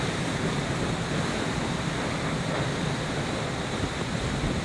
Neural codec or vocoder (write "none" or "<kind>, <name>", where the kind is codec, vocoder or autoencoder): none